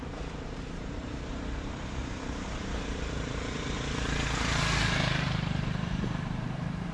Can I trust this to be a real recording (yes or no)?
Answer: no